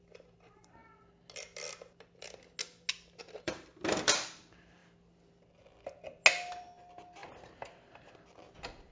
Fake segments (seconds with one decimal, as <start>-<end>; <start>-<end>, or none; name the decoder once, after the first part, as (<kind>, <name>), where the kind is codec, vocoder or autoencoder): 0.0-0.8 (vocoder, BigVGAN v2); 3.2-4.8; 6.6-8.9